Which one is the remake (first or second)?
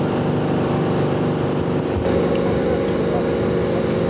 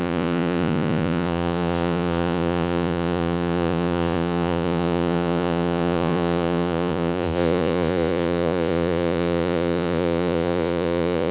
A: second